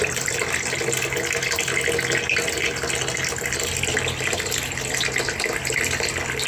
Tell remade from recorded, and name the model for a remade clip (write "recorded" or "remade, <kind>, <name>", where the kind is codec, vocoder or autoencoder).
recorded